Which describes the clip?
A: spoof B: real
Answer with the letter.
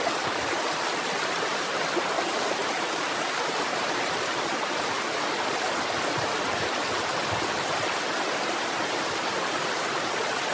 B